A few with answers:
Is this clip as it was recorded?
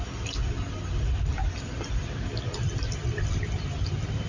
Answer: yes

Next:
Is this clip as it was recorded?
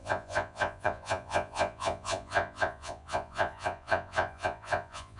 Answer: no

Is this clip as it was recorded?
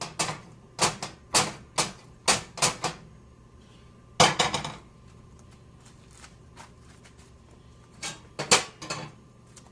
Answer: yes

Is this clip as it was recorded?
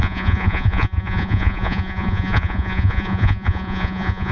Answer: no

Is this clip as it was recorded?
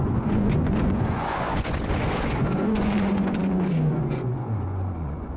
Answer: no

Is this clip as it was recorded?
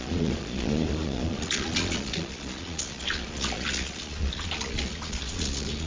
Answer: no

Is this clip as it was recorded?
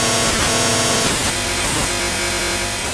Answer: yes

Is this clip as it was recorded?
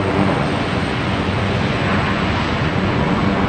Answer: no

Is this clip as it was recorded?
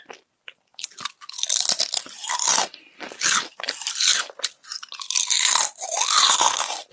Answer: yes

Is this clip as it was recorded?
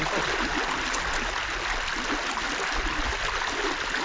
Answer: yes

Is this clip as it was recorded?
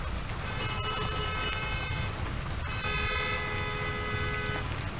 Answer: yes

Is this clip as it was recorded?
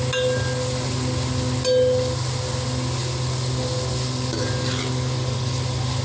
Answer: yes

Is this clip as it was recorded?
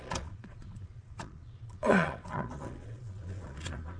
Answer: no